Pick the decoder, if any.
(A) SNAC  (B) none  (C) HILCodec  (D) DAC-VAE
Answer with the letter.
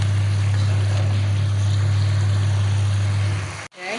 B